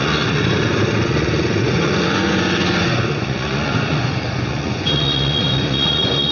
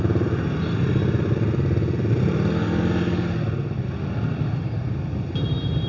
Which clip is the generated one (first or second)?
first